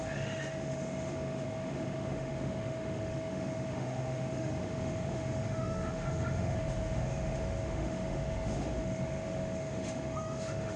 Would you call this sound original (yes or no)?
no